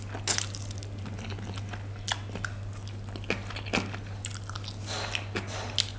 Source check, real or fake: real